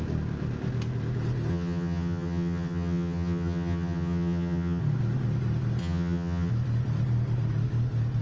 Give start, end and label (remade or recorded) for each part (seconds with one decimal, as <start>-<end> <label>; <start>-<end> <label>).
0.0-1.5 recorded; 1.5-4.8 remade; 4.8-5.8 recorded; 5.8-6.5 remade; 6.5-8.2 recorded